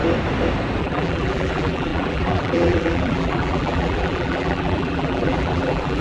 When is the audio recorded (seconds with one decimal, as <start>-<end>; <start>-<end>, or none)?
0.0-0.8